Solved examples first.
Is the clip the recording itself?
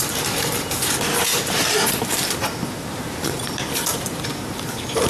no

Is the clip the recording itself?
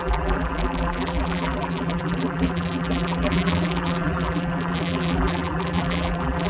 no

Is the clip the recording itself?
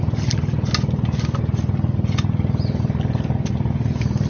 yes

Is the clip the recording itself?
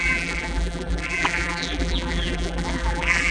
no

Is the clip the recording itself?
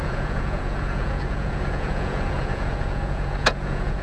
no